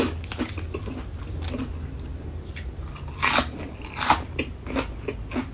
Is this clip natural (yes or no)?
yes